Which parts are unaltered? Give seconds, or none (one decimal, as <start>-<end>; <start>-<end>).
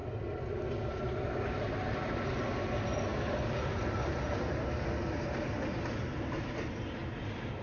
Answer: 0.0-7.6